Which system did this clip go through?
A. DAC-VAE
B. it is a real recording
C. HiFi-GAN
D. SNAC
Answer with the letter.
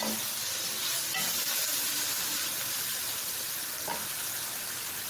B